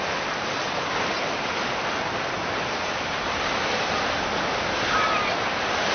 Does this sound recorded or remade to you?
recorded